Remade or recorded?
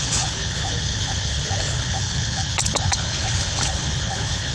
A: remade